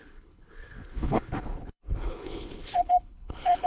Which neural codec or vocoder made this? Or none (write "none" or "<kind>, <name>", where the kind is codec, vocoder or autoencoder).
codec, HILCodec